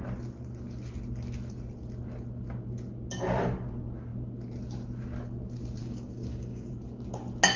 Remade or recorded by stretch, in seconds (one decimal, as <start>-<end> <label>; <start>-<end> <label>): 0.0-5.8 recorded; 5.8-6.7 remade; 6.7-7.6 recorded